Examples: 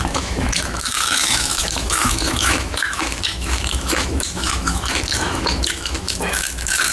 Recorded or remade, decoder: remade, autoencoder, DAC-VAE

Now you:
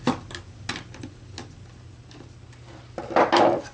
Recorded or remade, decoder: recorded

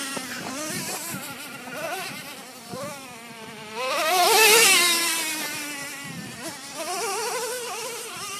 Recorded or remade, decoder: remade, vocoder, BigVGAN v2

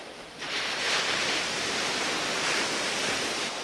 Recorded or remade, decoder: remade, vocoder, BigVGAN v2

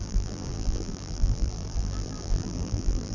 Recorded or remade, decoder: remade, vocoder, BigVGAN v2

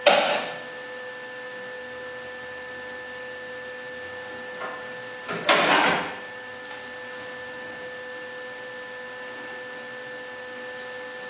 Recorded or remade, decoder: recorded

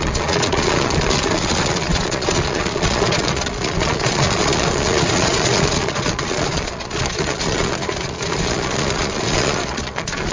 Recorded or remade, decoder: remade, vocoder, Vocos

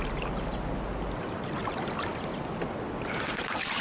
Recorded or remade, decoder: recorded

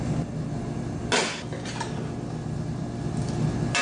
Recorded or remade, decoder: recorded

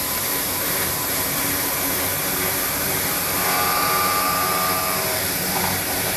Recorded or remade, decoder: remade, vocoder, BigVGAN v2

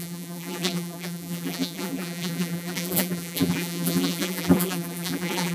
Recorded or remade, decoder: remade, vocoder, BigVGAN v2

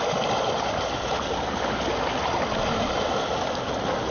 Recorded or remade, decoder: recorded